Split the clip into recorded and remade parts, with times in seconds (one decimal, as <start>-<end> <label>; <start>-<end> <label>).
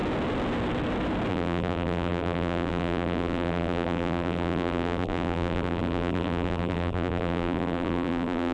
0.0-1.3 recorded; 1.3-8.5 remade